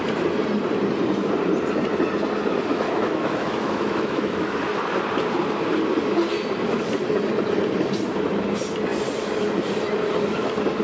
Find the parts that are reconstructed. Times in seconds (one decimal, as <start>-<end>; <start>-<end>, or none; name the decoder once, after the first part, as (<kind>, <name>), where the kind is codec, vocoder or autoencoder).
2.7-4.6 (autoencoder, DAC-VAE)